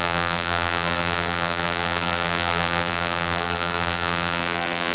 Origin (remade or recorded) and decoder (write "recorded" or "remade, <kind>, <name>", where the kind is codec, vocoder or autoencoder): remade, vocoder, BigVGAN v2